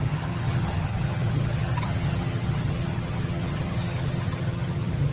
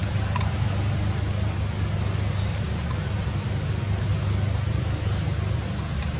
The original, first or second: second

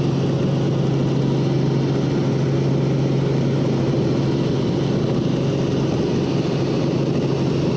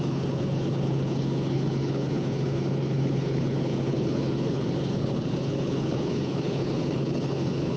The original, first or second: first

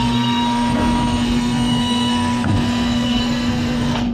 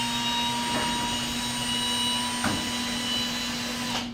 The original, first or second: second